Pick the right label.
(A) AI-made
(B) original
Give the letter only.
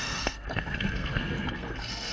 A